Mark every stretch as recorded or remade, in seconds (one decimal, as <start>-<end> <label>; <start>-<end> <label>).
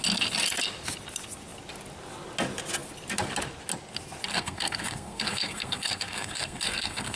0.0-4.3 recorded; 4.3-7.2 remade